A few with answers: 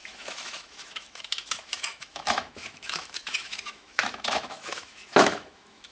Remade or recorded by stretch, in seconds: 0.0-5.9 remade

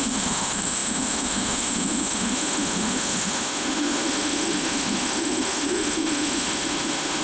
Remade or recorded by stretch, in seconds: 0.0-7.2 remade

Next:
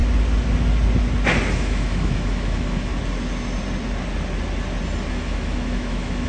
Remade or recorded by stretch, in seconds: 0.0-1.5 recorded; 1.5-2.9 remade; 2.9-5.1 recorded; 5.1-6.3 remade

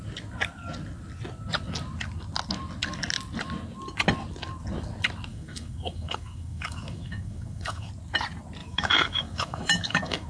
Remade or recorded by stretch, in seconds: 0.0-5.3 recorded; 5.3-7.9 remade; 7.9-8.6 recorded; 8.6-10.3 remade

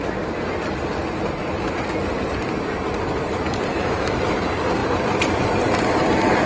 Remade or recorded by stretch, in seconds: 0.0-3.7 recorded; 3.7-4.2 remade; 4.2-6.5 recorded

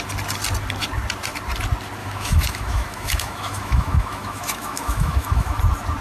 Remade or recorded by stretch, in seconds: 0.0-2.0 recorded; 2.0-5.6 remade; 5.6-6.0 recorded